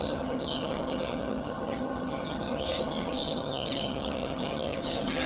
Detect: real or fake fake